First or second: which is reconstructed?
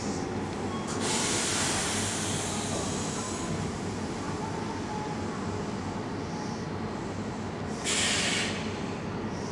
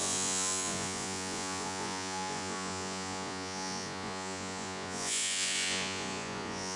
second